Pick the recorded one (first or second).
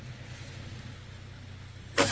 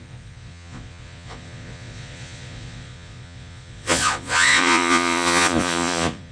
first